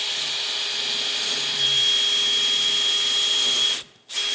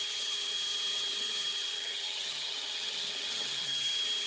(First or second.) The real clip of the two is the first